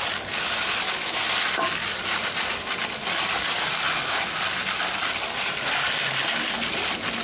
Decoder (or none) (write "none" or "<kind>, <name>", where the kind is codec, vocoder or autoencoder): none